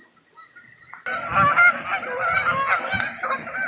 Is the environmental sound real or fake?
real